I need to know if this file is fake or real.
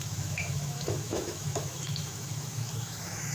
fake